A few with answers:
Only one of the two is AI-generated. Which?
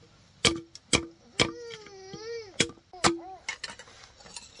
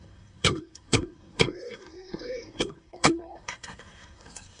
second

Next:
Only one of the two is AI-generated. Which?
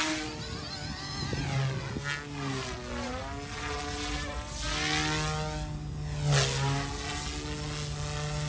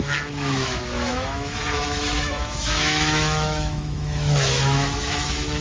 second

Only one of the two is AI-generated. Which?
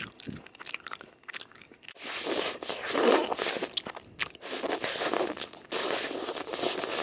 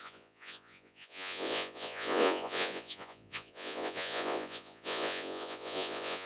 second